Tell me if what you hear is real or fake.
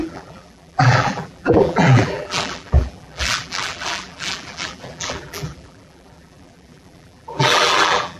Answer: fake